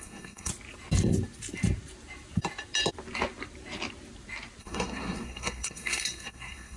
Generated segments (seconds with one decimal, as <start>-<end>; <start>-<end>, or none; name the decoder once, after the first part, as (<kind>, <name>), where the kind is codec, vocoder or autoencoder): 0.0-0.5 (codec, SNAC); 4.6-6.8